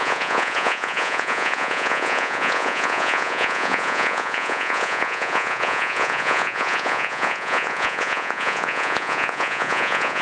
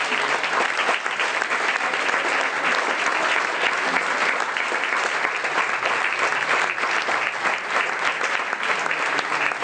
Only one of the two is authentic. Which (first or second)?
second